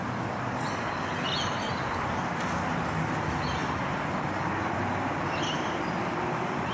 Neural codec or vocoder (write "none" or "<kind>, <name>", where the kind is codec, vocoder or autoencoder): none